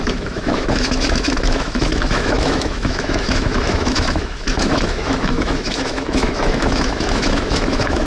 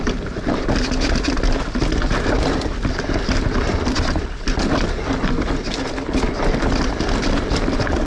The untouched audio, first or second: second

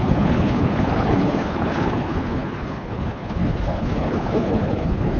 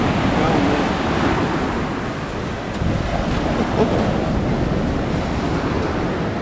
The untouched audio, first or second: second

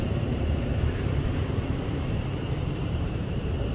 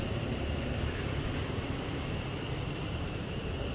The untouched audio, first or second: second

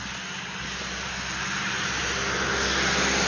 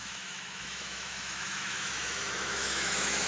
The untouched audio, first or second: first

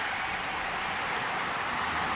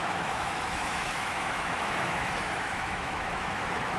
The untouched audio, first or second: first